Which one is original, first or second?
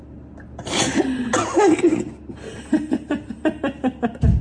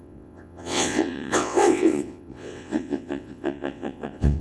first